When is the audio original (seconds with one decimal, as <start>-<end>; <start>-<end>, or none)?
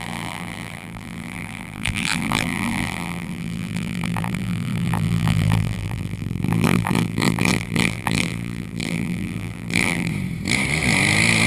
10.1-11.5